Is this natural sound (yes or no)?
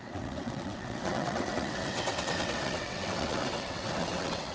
no